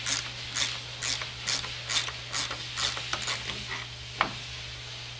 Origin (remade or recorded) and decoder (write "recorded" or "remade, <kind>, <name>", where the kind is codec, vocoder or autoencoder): recorded